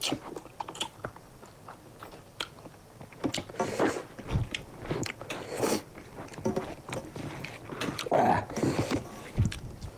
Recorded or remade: recorded